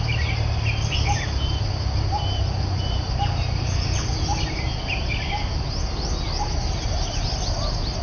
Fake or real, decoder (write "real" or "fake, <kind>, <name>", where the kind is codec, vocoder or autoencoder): real